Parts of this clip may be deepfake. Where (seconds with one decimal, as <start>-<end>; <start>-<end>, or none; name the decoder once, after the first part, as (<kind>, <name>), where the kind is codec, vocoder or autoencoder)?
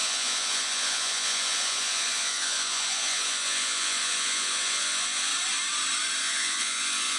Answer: 0.0-5.3 (vocoder, Vocos); 6.2-7.2